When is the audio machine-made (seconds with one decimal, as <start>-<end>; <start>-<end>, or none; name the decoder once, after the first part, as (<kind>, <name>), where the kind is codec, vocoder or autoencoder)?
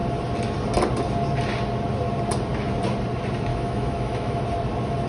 3.5-4.4 (autoencoder, DAC-VAE)